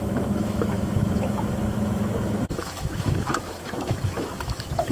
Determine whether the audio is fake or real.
fake